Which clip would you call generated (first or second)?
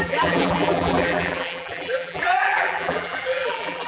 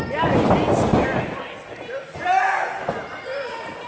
first